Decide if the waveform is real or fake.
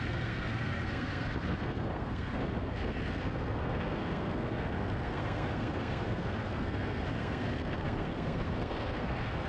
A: fake